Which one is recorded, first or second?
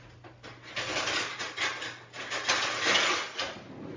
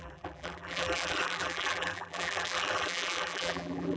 first